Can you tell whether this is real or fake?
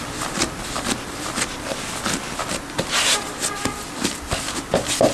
real